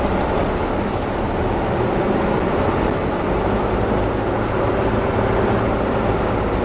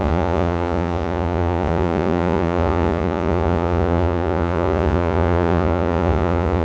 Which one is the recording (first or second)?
first